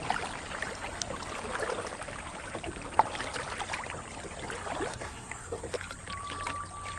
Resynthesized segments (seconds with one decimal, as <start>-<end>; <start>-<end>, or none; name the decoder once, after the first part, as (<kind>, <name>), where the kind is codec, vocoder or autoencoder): 4.9-5.6 (codec, SNAC)